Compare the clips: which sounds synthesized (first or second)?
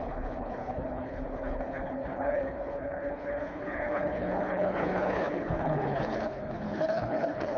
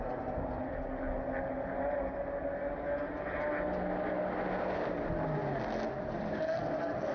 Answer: first